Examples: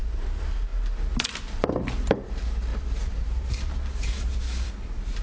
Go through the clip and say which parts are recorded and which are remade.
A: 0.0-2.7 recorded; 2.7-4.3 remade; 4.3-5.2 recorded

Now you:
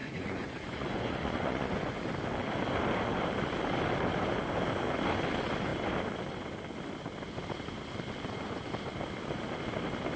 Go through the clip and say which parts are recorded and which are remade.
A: 0.0-2.0 remade; 2.0-10.2 recorded

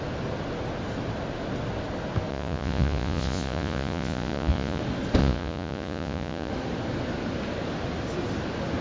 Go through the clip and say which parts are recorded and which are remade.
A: 0.0-2.3 recorded; 2.3-4.8 remade; 4.8-5.2 recorded; 5.2-6.5 remade; 6.5-8.8 recorded